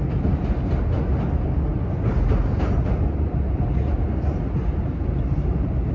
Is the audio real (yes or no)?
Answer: yes